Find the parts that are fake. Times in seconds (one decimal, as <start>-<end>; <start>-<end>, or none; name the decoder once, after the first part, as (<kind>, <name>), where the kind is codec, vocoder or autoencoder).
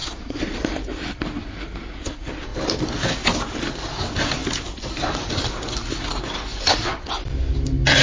0.0-0.6 (vocoder, Vocos)